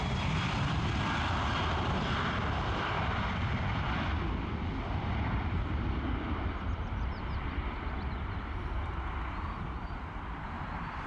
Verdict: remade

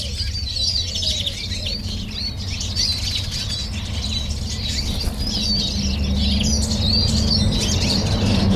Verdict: recorded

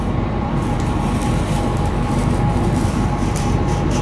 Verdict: remade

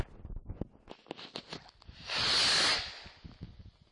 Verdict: recorded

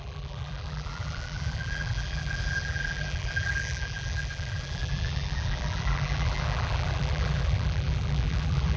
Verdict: remade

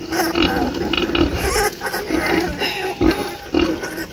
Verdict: recorded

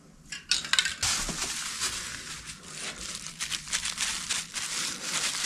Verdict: recorded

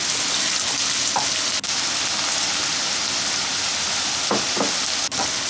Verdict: recorded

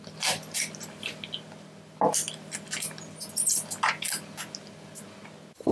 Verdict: recorded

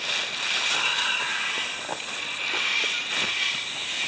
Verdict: recorded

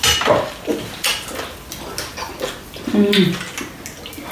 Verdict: recorded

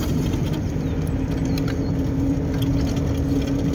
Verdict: recorded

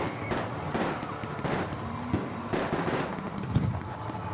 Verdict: remade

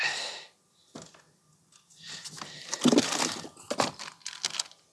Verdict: recorded